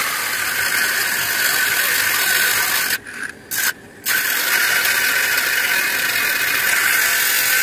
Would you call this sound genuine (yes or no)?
yes